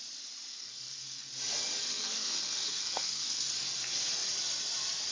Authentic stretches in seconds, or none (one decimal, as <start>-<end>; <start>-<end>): 0.0-0.5; 1.3-1.8; 3.5-5.1